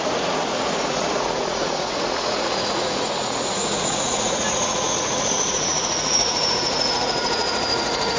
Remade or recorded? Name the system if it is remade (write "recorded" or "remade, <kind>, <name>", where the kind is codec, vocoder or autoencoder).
remade, vocoder, Vocos